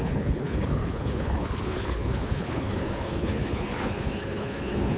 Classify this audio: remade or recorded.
remade